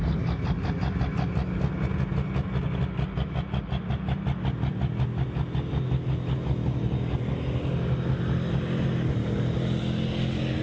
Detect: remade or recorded recorded